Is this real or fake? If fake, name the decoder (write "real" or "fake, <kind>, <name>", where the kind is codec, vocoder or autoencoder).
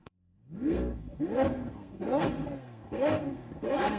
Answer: fake, codec, SNAC